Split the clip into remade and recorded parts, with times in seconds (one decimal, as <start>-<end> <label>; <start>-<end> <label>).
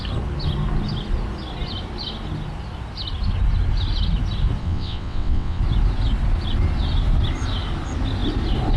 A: 0.0-4.6 recorded; 4.6-5.6 remade; 5.6-8.8 recorded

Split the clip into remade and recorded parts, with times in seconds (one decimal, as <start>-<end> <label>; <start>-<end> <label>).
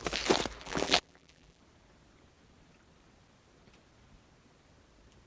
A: 0.0-0.6 recorded; 0.6-1.6 remade; 1.6-5.3 recorded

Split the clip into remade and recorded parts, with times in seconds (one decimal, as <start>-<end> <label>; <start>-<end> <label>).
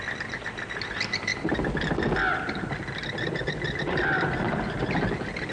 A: 0.0-5.5 recorded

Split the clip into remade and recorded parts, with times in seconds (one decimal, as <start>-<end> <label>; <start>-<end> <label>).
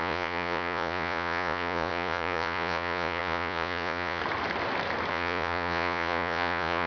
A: 0.0-4.2 remade; 4.2-5.1 recorded; 5.1-6.9 remade